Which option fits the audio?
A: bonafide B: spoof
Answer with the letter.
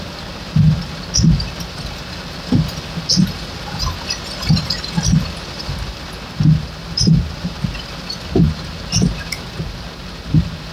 A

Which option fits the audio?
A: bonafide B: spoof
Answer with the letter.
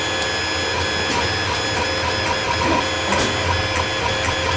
A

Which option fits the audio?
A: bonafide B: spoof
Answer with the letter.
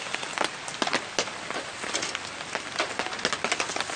A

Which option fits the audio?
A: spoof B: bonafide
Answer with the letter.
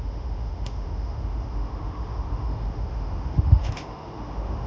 A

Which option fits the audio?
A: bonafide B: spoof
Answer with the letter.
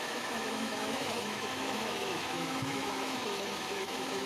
B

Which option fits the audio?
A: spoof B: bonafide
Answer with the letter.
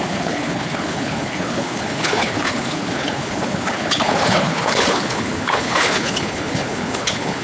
A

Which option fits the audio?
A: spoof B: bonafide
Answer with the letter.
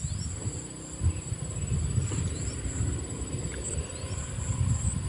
B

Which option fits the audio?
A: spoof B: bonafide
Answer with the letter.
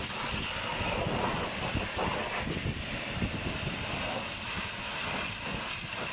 B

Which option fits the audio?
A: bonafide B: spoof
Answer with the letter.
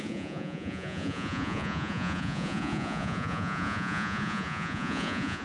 B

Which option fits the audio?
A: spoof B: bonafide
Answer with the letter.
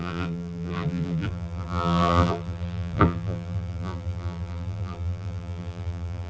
A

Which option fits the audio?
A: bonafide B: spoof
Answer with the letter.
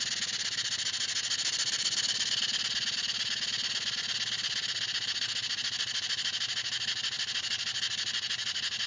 A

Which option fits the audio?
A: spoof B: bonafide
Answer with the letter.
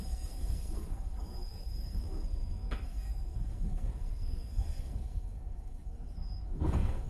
A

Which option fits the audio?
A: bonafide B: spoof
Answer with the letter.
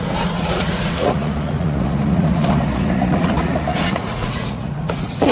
B